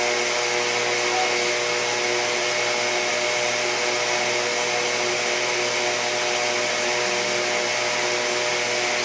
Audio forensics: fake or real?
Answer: real